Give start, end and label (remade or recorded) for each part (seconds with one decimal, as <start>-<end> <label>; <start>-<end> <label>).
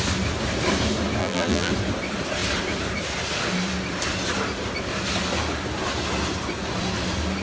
0.0-1.2 recorded; 1.2-1.7 remade; 1.7-7.4 recorded